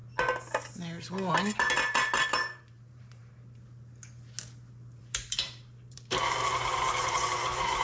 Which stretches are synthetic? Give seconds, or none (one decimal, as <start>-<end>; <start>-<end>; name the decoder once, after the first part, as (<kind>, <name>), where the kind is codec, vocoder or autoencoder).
1.3-3.2 (vocoder, BigVGAN v2); 5.0-7.8